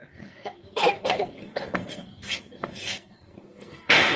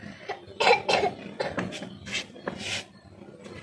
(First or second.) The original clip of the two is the second